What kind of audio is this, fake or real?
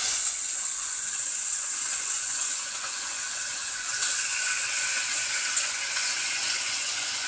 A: fake